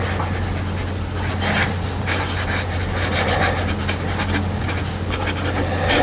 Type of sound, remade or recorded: recorded